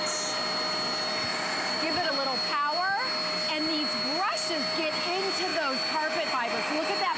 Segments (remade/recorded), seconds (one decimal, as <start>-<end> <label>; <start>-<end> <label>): 0.0-1.3 recorded; 1.3-2.1 remade; 2.1-7.2 recorded